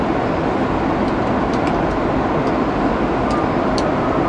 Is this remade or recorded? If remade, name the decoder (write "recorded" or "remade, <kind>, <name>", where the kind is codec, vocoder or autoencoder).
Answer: recorded